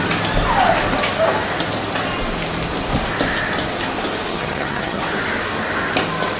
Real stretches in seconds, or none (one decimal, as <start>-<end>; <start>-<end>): 0.0-4.3; 5.0-6.4